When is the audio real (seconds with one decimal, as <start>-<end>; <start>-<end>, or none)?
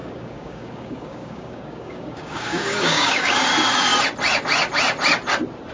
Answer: 3.4-5.7